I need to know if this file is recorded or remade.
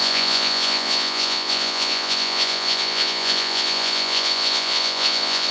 remade